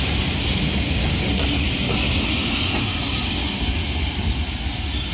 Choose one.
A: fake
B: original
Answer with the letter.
B